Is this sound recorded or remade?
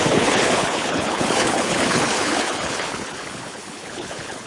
remade